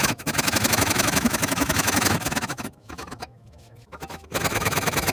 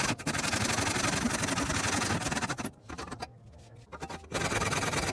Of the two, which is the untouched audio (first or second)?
second